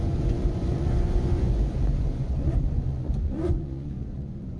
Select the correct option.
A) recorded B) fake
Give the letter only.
B